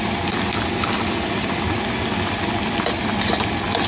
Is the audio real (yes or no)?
yes